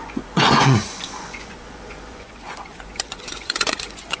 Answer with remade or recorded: remade